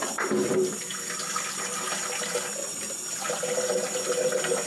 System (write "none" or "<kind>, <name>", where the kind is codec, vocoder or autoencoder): none